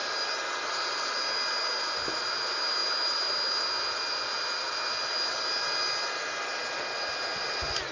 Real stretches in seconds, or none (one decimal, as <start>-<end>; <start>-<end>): 0.7-7.9